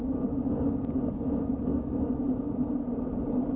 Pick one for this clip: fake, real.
real